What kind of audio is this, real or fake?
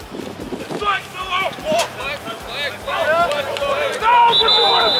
real